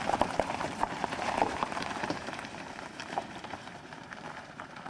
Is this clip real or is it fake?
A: fake